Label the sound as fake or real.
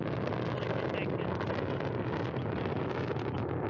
real